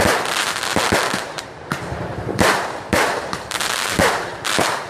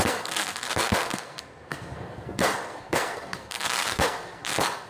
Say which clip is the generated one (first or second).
second